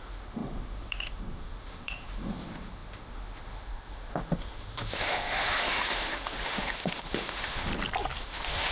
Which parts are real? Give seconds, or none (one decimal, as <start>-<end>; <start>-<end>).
7.7-8.2